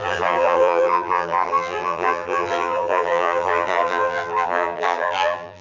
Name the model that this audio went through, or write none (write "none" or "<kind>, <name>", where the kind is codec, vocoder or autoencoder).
vocoder, BigVGAN v2